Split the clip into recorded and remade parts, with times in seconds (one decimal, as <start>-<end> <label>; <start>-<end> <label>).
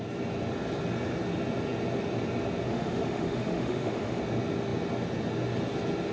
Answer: 0.0-2.7 recorded; 2.7-4.2 remade; 4.2-6.1 recorded